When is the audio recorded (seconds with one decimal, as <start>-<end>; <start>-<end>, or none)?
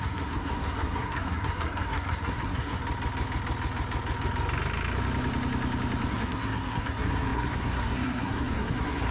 2.8-6.1